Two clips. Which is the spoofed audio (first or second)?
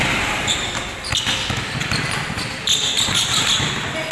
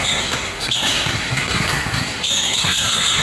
second